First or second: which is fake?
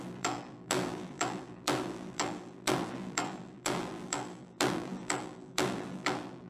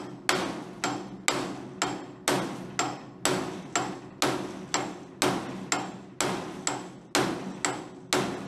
first